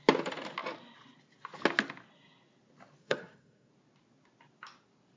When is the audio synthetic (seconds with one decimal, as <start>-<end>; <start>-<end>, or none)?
3.0-3.7

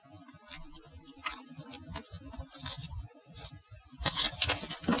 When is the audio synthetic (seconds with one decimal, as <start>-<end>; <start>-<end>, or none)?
2.8-3.5; 4.0-4.6

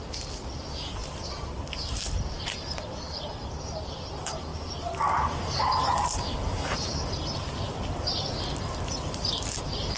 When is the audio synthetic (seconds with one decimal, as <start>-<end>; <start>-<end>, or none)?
none

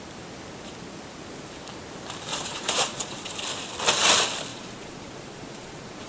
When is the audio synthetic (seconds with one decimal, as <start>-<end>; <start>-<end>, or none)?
2.3-3.3; 4.5-6.1

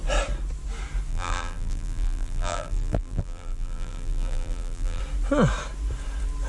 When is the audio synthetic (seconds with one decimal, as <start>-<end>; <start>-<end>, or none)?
1.1-5.0

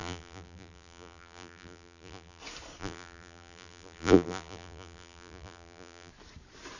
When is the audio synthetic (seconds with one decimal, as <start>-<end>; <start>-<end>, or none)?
0.0-2.4; 2.8-6.1

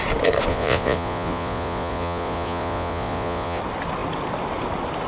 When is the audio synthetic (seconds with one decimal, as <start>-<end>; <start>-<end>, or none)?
0.5-3.6

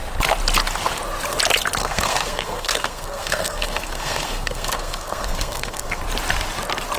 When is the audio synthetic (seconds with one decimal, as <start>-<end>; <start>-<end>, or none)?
1.8-6.0